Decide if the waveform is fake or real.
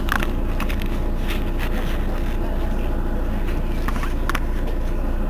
real